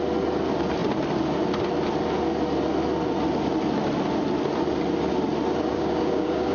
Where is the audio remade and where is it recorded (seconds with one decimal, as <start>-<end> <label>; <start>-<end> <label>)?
0.0-5.7 recorded; 5.7-6.5 remade